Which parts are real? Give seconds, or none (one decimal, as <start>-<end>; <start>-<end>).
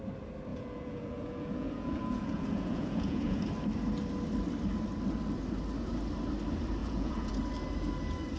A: 0.0-0.5; 3.4-6.8; 7.3-8.4